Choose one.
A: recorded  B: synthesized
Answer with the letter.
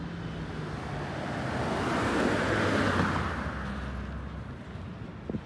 A